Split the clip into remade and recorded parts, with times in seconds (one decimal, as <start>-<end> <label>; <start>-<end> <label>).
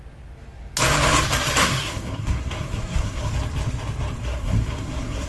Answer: 0.0-1.6 recorded; 1.6-3.3 remade; 3.3-4.2 recorded; 4.2-5.3 remade